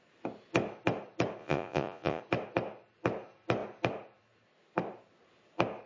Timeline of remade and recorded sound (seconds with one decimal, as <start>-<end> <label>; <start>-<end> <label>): 0.0-1.4 recorded; 1.4-2.2 remade; 2.2-5.9 recorded